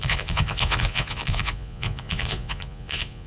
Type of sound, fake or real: fake